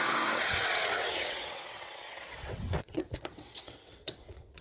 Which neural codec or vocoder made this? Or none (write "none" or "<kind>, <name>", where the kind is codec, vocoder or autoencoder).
vocoder, WaveNeXt